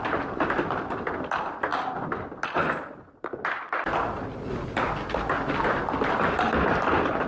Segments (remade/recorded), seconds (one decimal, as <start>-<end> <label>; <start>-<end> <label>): 0.0-7.3 recorded